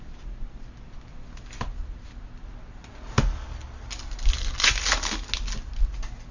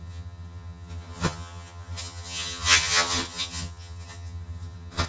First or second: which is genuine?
first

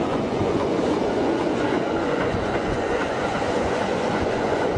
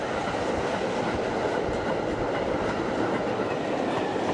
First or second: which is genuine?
second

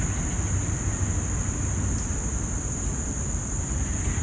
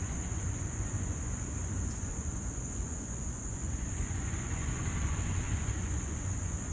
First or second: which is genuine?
first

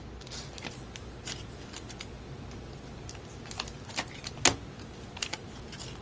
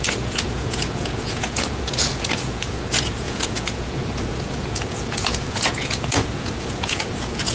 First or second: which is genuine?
first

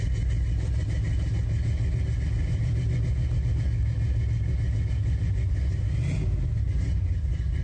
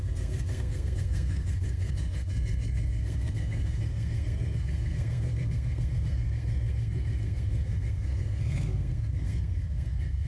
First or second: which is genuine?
first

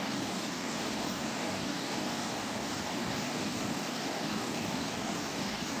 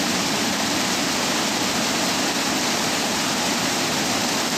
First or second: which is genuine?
second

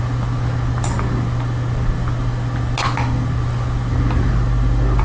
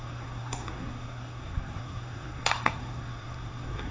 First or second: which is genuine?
first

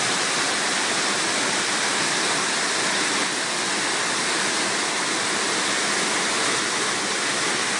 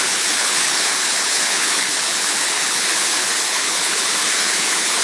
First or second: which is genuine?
first